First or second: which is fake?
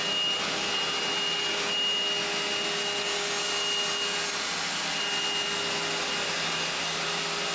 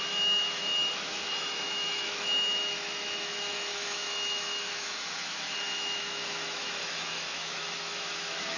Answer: second